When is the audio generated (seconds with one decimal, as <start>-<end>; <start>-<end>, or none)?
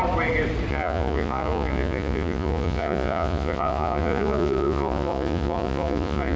0.7-6.4